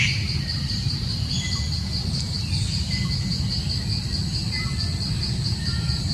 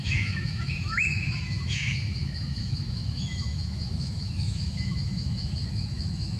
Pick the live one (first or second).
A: first